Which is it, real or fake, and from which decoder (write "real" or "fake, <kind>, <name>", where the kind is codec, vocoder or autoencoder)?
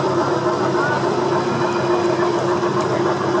real